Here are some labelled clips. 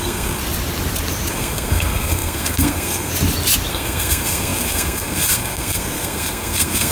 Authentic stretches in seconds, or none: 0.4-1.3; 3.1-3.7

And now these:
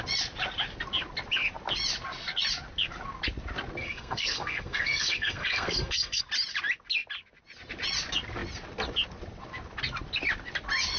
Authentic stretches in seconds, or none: 0.0-3.8; 6.2-11.0

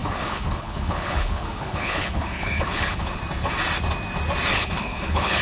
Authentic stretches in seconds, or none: 3.2-4.5

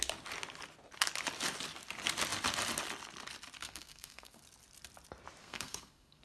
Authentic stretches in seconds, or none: 0.0-3.6; 4.4-5.4